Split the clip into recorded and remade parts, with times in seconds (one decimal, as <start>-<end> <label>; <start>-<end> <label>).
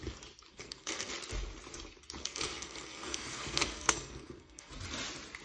0.0-0.5 recorded; 0.5-1.1 remade; 1.1-2.2 recorded; 2.2-4.7 remade; 4.7-5.4 recorded